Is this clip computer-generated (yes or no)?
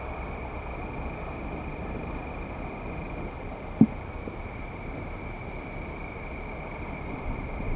no